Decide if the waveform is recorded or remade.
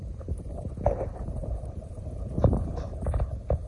remade